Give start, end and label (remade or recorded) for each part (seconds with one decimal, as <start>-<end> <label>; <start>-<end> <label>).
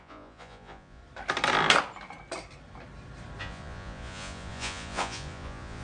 0.0-1.0 remade; 1.0-3.4 recorded; 3.4-5.8 remade